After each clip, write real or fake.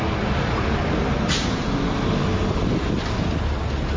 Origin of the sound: real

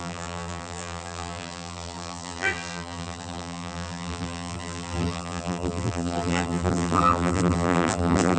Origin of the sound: fake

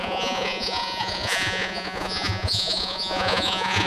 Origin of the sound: fake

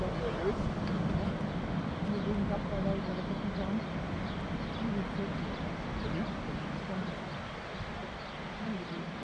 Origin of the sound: real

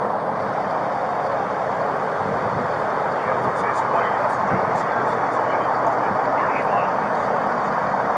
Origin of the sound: real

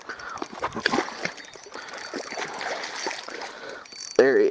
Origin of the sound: real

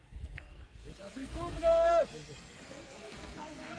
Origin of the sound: fake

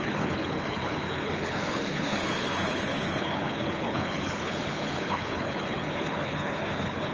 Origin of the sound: fake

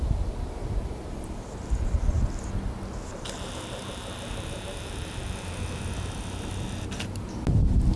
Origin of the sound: real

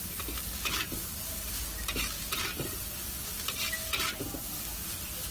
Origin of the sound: real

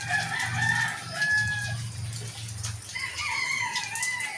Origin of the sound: real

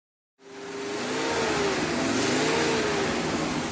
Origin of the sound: real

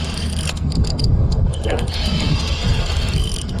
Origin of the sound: fake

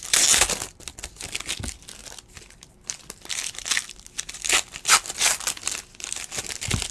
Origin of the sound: real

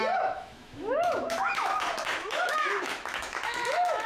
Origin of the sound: fake